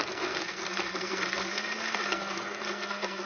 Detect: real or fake fake